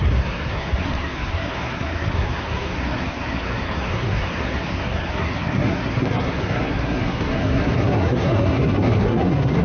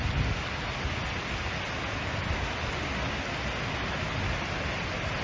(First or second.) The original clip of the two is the second